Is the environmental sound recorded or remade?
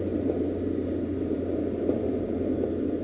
recorded